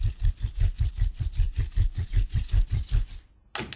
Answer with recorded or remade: recorded